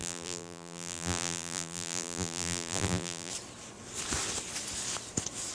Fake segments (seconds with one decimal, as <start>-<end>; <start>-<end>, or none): 0.0-3.3